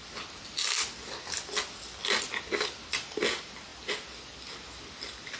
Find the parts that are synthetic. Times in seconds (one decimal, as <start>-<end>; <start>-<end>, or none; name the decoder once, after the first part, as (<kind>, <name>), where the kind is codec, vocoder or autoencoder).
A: none